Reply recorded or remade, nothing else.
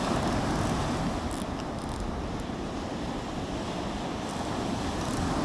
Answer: recorded